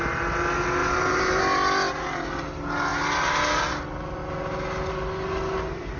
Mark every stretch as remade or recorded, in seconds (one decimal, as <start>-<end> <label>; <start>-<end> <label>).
0.0-0.8 recorded; 0.8-1.4 remade; 1.4-6.0 recorded